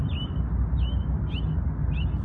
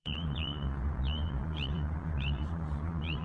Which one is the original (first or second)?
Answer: first